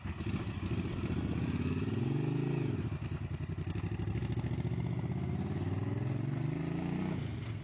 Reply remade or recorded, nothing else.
recorded